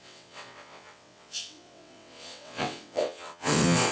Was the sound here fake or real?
fake